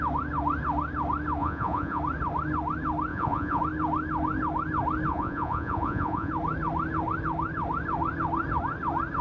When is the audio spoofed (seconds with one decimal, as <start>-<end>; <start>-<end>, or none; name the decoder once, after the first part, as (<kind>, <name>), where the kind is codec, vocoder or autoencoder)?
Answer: 1.4-2.0 (vocoder, Vocos); 3.1-3.6; 5.1-6.3